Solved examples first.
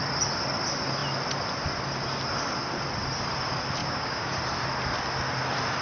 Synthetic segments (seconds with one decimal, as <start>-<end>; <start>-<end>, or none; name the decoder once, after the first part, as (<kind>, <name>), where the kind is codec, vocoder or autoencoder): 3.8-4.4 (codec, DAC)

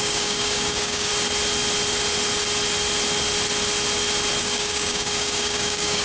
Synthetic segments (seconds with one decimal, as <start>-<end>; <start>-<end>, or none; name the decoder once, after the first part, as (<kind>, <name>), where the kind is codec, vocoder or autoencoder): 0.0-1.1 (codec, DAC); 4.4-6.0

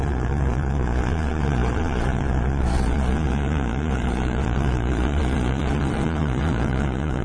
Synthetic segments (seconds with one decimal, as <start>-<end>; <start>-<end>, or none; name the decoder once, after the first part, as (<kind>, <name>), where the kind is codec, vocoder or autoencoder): 0.0-7.2 (vocoder, Vocos)

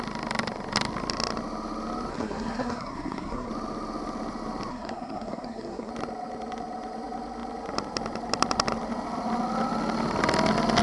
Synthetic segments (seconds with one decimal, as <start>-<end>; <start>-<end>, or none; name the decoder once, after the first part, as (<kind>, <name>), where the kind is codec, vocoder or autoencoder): 2.1-3.5 (codec, SNAC); 4.7-5.9

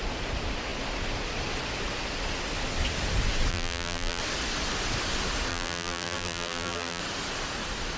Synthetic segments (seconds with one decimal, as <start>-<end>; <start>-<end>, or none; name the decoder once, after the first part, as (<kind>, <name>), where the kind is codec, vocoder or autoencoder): 3.5-4.2 (vocoder, BigVGAN v2); 5.5-7.0

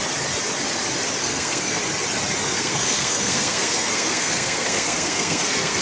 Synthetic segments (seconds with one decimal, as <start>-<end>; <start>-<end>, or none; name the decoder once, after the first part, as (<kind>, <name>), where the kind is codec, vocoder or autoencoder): 1.2-1.8 (codec, SNAC); 2.4-5.8

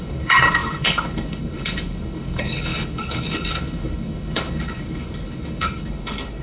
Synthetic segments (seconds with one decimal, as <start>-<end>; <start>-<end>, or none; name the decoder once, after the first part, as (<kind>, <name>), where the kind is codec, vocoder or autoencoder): 0.0-6.4 (codec, HILCodec)

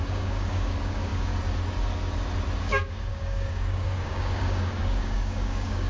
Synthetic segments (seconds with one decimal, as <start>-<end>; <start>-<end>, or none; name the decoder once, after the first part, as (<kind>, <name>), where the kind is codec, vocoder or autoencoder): 0.0-1.3 (codec, DAC); 2.6-5.9